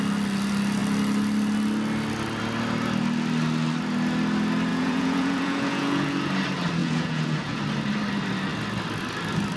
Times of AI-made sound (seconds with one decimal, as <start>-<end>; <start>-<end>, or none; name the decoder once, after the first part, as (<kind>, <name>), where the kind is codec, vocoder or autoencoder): 4.7-6.3 (vocoder, Vocos); 6.8-7.6